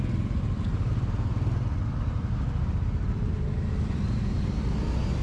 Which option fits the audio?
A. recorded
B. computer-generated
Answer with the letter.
A